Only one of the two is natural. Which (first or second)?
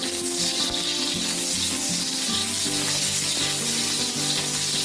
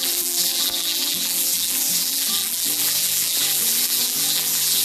first